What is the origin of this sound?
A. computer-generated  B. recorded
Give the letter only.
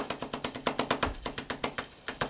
B